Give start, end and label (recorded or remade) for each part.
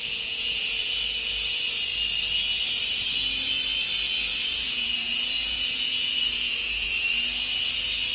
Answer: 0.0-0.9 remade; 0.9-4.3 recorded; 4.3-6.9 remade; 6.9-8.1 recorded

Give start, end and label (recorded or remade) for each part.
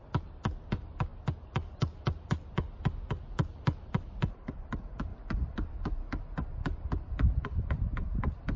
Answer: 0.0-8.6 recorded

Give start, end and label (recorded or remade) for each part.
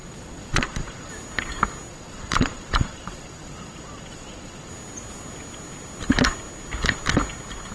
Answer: 0.0-1.1 remade; 1.1-1.9 recorded; 1.9-4.7 remade; 4.7-7.7 recorded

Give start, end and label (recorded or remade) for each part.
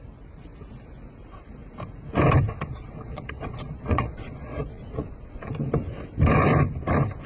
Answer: 0.0-2.7 recorded; 2.7-5.5 remade; 5.5-7.3 recorded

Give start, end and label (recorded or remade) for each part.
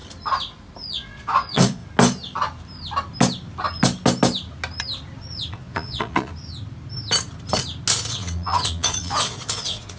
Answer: 0.0-0.9 recorded; 0.9-1.8 remade; 1.8-5.5 recorded; 5.5-6.3 remade; 6.3-8.1 recorded; 8.1-10.0 remade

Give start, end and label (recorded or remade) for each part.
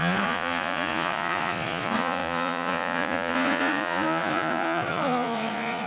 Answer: 0.0-5.9 remade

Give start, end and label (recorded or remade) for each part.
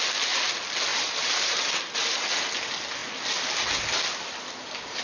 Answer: 0.0-0.9 recorded; 0.9-1.7 remade; 1.7-5.0 recorded